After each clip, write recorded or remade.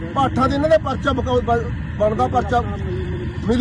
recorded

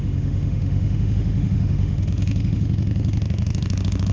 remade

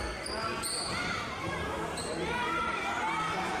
recorded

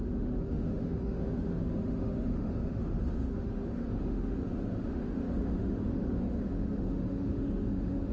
remade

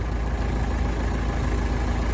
recorded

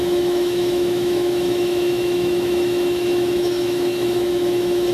remade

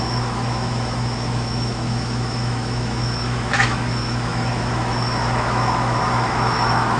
remade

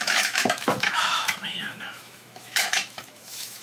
remade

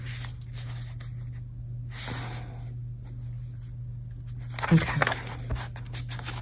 recorded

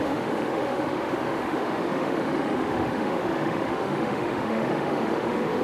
remade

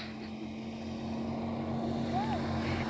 recorded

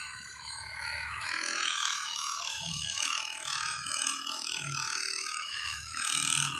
remade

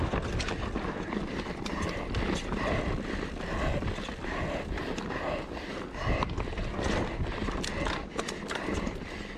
recorded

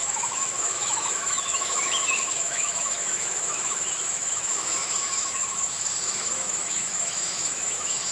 remade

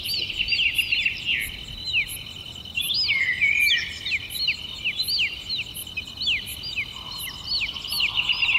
recorded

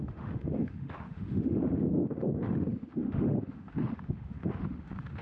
remade